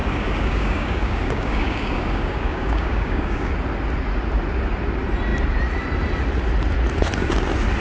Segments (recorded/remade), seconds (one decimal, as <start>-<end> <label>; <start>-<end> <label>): 0.0-3.5 remade; 3.5-7.8 recorded

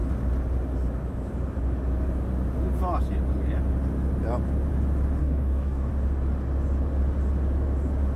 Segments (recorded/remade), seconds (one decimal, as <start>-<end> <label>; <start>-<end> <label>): 0.0-5.2 recorded; 5.2-5.9 remade; 5.9-8.2 recorded

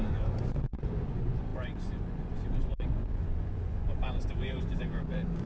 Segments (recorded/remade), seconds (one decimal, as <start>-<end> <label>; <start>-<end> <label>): 0.0-5.5 remade